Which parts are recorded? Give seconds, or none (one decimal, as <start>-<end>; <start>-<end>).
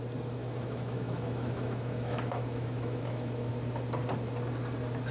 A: 0.0-0.4; 3.5-5.1